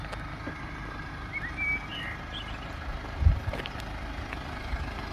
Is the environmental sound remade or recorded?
recorded